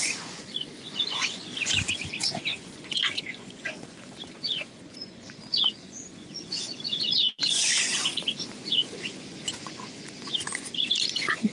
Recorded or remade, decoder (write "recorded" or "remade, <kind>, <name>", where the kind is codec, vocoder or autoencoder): remade, vocoder, Vocos